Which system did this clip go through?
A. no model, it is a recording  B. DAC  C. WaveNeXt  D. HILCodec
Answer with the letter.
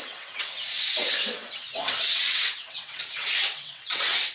C